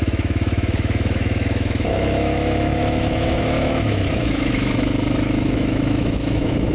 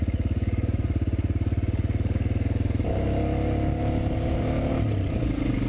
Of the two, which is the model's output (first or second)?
first